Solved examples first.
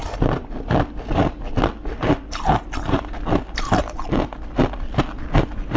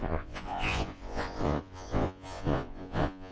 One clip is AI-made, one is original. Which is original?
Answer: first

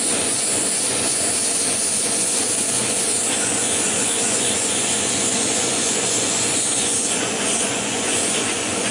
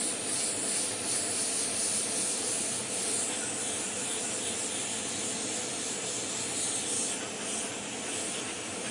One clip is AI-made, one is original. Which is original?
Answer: second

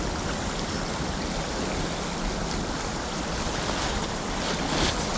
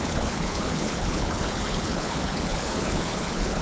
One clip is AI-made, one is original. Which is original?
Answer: first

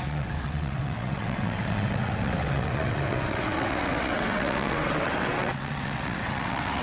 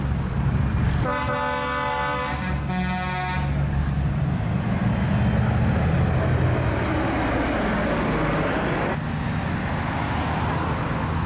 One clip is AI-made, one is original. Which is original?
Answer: second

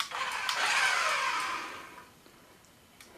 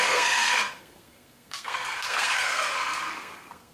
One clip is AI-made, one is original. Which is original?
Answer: first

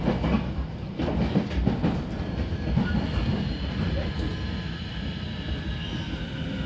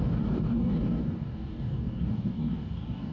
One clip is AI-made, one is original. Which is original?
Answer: first